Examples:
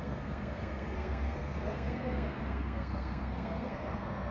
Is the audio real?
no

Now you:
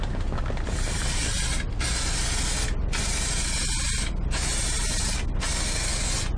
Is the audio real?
yes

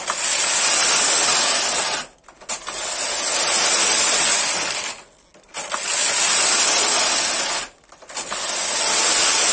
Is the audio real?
yes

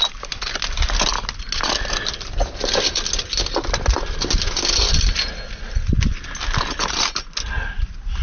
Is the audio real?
yes